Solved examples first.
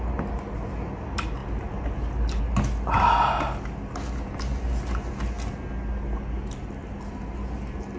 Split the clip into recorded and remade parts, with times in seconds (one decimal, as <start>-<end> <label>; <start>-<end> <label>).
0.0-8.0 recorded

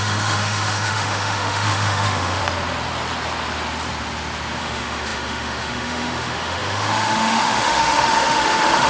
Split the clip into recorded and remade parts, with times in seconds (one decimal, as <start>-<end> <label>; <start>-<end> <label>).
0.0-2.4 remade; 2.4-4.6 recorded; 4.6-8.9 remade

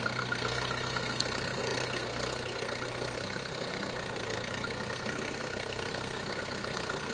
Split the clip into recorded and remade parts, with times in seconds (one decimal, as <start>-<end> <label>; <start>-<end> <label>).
0.0-7.1 remade